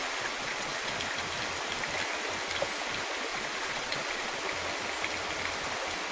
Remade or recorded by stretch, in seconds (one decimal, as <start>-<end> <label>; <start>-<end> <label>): 0.0-0.9 remade; 0.9-3.3 recorded; 3.3-4.4 remade; 4.4-6.1 recorded